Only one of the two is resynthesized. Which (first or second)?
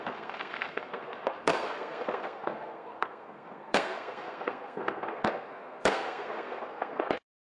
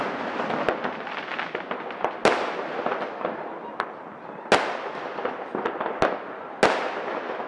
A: first